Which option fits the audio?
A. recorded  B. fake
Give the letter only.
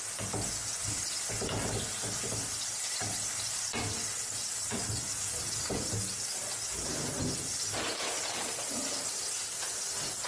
A